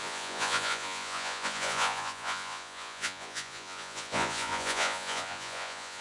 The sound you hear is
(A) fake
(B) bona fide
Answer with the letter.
A